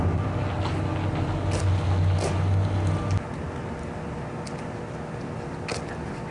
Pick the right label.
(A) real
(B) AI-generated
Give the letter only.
A